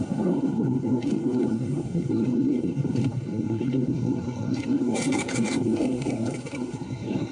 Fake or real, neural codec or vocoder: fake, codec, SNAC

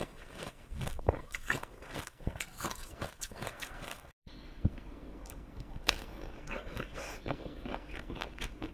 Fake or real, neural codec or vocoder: fake, codec, SNAC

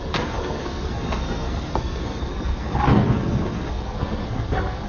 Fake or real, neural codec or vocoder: fake, codec, SNAC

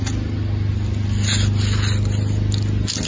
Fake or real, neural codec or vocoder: real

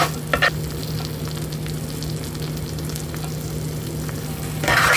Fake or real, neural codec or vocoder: real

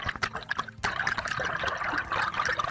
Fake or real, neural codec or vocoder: real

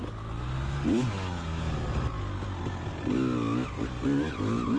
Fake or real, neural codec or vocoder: real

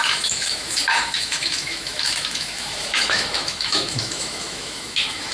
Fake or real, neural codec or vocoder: fake, autoencoder, DAC-VAE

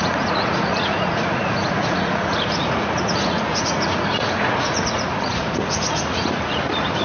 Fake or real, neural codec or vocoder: fake, vocoder, Vocos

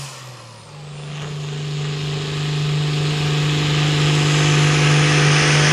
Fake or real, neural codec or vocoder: real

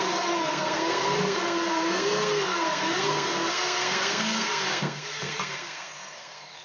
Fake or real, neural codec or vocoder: fake, codec, SNAC